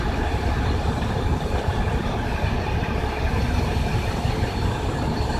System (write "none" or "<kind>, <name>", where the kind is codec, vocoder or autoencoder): vocoder, BigVGAN v2